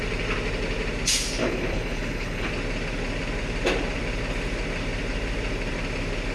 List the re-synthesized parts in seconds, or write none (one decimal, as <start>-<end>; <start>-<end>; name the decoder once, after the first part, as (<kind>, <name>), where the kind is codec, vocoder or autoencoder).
1.4-2.5 (codec, HILCodec)